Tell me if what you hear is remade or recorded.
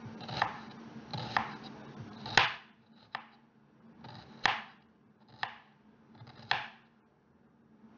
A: recorded